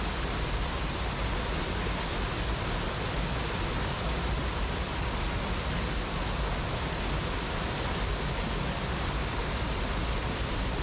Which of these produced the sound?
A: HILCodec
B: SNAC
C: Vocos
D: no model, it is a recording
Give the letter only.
D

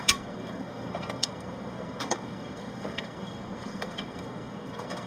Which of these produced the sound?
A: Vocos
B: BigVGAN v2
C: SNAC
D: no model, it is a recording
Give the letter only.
C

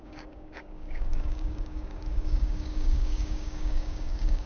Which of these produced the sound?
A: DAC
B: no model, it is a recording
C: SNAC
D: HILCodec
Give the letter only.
A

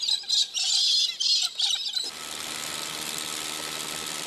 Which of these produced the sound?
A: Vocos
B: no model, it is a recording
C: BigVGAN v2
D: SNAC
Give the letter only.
B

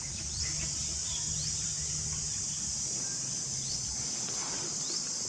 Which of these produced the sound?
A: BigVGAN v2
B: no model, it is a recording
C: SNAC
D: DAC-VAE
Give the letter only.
A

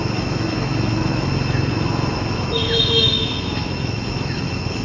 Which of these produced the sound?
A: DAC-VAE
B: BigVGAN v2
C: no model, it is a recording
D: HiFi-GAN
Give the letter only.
A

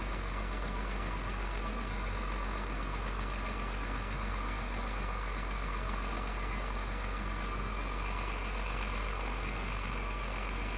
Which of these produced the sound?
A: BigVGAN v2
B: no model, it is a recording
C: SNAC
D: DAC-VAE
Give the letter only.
C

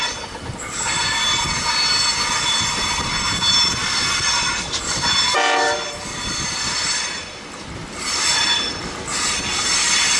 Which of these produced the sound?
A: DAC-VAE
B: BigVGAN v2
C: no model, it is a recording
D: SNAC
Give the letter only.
C